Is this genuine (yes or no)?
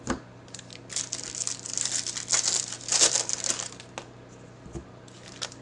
yes